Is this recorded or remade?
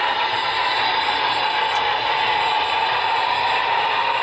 recorded